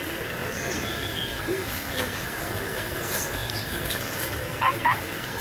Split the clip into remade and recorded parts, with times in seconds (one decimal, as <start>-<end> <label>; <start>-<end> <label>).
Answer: 0.0-5.4 remade

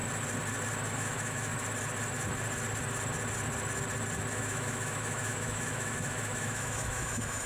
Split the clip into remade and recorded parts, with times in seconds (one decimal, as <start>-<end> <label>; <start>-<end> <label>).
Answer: 0.0-0.9 recorded; 0.9-1.5 remade; 1.5-4.3 recorded; 4.3-7.5 remade

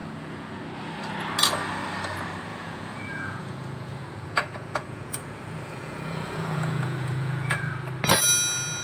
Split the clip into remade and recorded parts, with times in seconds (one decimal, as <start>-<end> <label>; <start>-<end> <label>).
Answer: 0.0-0.6 remade; 0.6-2.5 recorded; 2.5-7.6 remade; 7.6-8.8 recorded

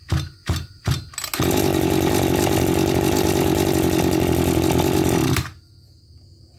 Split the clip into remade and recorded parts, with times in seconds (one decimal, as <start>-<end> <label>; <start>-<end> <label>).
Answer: 0.0-6.6 recorded